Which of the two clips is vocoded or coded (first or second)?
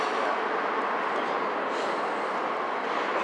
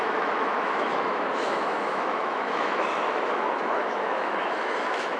second